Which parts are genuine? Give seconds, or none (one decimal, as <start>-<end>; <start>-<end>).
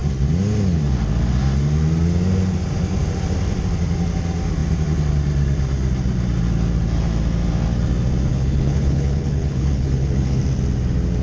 0.0-8.3; 10.4-11.2